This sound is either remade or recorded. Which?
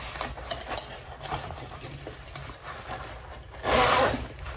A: recorded